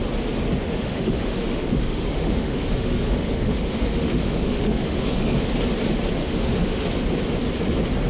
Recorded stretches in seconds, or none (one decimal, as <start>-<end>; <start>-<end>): 0.0-0.6; 5.5-6.2; 6.8-8.1